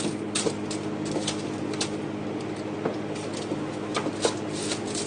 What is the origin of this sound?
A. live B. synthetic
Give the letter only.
A